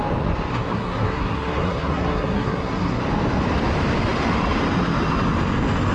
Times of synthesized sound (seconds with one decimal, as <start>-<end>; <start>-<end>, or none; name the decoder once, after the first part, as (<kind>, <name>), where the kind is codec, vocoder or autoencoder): 0.5-3.0 (codec, SNAC)